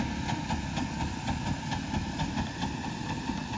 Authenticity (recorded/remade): recorded